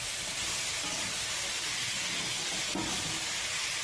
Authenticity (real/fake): real